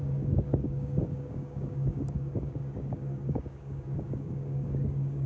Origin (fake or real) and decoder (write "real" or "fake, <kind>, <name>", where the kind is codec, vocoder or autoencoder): fake, codec, DAC